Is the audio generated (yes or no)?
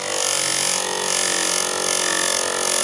no